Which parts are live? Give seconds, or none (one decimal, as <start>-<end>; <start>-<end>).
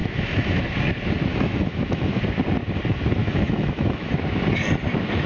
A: 0.6-1.3; 2.2-3.2; 4.1-5.3